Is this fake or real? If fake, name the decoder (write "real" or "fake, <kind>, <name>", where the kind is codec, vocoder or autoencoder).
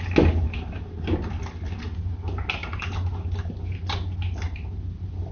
real